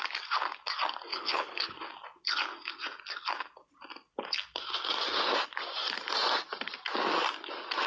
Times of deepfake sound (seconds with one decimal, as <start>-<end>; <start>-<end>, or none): 1.1-1.7